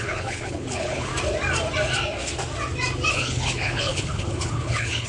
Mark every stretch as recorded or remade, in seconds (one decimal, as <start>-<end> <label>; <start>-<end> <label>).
0.0-1.1 remade; 1.1-3.1 recorded; 3.1-5.1 remade

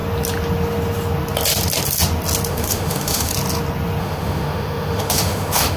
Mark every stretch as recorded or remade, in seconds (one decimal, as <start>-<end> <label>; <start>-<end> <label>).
0.0-2.5 recorded; 2.5-3.3 remade; 3.3-4.0 recorded; 4.0-5.8 remade

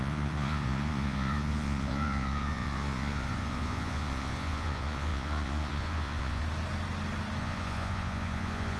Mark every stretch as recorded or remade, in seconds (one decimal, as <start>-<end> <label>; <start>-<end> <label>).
0.0-6.4 remade; 6.4-7.4 recorded; 7.4-8.8 remade

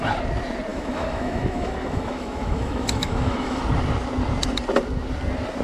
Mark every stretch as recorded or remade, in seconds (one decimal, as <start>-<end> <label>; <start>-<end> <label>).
0.0-0.7 recorded; 0.7-3.6 remade; 3.6-5.6 recorded

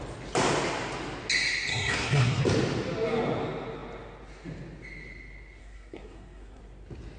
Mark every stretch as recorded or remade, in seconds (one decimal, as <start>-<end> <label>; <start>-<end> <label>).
0.0-1.7 recorded; 1.7-2.4 remade; 2.4-5.6 recorded; 5.6-6.6 remade; 6.6-7.2 recorded